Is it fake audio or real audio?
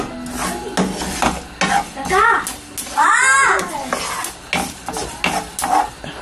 real